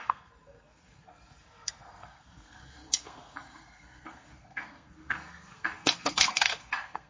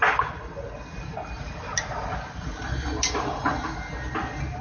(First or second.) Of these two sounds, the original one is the second